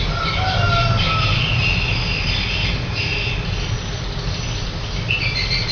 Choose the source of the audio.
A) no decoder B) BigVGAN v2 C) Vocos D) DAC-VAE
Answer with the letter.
A